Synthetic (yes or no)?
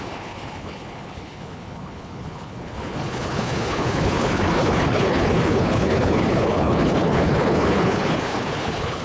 yes